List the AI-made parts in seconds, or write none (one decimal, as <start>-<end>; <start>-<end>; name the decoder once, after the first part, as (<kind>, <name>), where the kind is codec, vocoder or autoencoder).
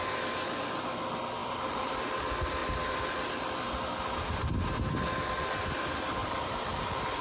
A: 1.4-1.9 (vocoder, BigVGAN v2); 6.2-7.2